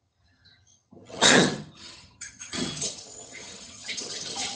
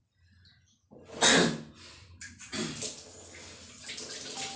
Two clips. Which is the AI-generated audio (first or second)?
first